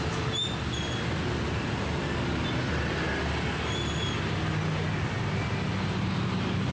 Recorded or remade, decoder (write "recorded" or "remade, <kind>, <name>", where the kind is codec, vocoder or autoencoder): recorded